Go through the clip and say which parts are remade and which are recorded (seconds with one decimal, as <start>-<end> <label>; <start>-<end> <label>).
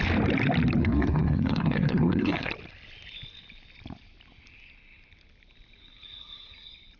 0.0-0.8 recorded; 0.8-2.5 remade; 2.5-7.0 recorded